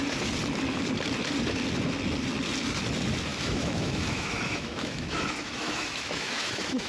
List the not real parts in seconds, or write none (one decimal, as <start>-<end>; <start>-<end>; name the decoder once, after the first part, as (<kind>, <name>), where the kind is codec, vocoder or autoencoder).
3.3-6.9 (autoencoder, DAC-VAE)